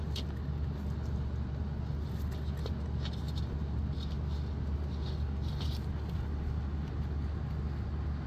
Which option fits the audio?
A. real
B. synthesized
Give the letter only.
A